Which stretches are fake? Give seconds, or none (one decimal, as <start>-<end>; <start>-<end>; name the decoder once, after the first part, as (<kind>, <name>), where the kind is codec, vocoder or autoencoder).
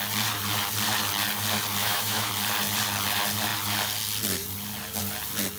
1.8-2.3 (autoencoder, DAC-VAE)